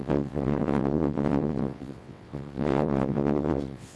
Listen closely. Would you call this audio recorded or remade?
remade